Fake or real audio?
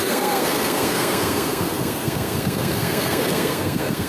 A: fake